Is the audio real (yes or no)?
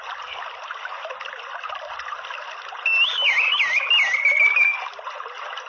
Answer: yes